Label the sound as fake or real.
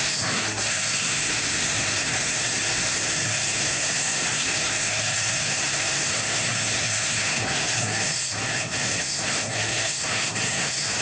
fake